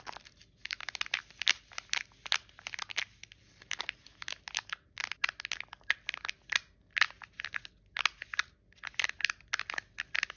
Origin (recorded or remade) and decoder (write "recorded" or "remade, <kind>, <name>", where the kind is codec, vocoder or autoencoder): recorded